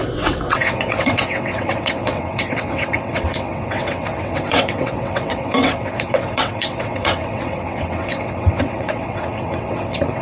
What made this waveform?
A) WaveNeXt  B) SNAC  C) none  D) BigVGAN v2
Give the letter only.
A